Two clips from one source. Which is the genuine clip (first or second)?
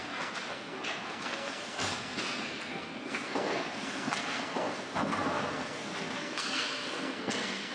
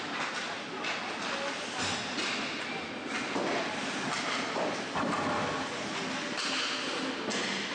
second